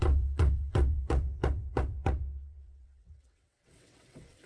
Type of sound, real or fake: fake